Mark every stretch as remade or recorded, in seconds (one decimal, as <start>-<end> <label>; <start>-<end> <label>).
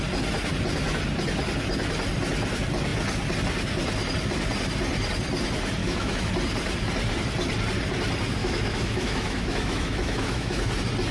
0.0-5.8 recorded; 5.8-6.3 remade; 6.3-8.4 recorded; 8.4-10.7 remade; 10.7-11.1 recorded